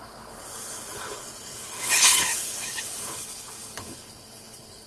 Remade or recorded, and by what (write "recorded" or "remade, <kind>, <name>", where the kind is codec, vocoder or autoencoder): remade, codec, HILCodec